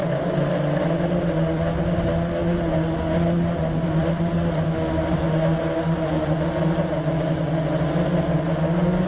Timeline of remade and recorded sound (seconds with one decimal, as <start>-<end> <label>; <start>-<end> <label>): 0.0-9.1 recorded